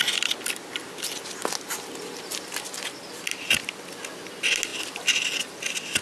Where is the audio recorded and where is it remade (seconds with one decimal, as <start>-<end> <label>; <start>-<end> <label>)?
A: 0.0-6.0 recorded